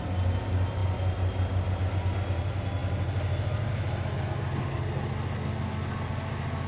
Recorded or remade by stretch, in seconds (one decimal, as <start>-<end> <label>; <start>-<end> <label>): 0.0-6.7 recorded